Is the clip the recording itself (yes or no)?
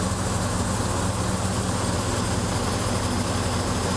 yes